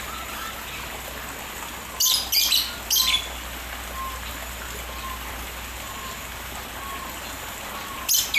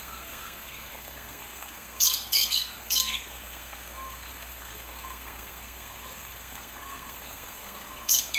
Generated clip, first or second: second